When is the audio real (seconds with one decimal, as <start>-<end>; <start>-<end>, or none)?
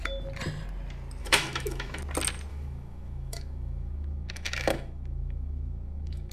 0.0-1.2; 2.0-2.5